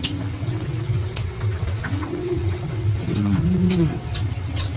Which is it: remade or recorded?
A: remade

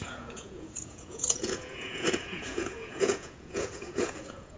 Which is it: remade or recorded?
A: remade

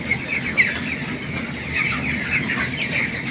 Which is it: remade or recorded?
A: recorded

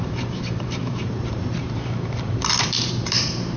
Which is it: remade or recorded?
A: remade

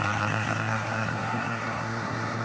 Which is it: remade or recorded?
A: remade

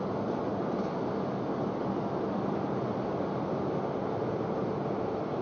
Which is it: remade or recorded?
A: recorded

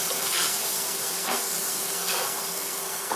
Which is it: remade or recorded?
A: remade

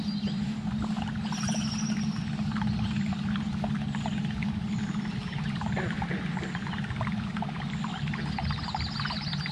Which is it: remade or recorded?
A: recorded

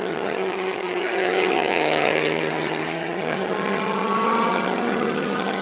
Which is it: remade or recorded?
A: remade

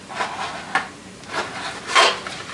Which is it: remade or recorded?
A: recorded